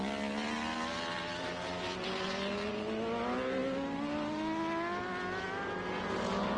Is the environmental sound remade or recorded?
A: recorded